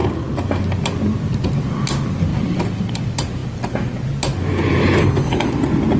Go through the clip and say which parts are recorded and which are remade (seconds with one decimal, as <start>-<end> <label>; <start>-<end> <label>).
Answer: 0.0-5.0 recorded; 5.0-5.5 remade; 5.5-6.0 recorded